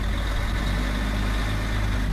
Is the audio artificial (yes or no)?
no